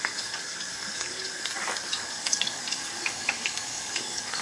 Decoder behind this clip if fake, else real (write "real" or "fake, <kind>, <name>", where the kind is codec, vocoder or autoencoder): fake, codec, DAC